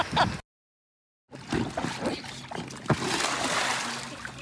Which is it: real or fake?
real